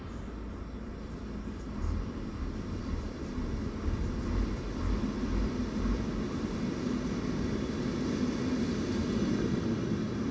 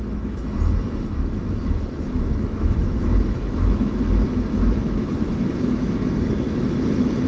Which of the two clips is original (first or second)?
first